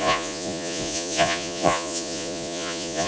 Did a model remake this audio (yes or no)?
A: yes